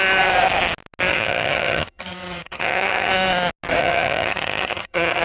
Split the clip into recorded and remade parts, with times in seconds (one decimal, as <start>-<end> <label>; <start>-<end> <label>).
0.0-1.1 recorded; 1.1-3.1 remade; 3.1-3.8 recorded; 3.8-5.2 remade

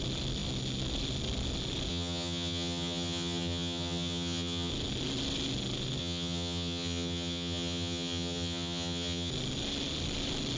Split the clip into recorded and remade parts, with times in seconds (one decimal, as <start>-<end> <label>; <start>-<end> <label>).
0.0-1.9 recorded; 1.9-4.7 remade; 4.7-6.0 recorded; 6.0-9.3 remade; 9.3-10.6 recorded

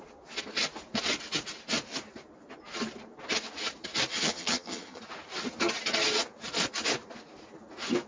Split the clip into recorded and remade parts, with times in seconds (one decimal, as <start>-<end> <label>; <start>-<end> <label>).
0.0-4.1 recorded; 4.1-5.0 remade; 5.0-8.1 recorded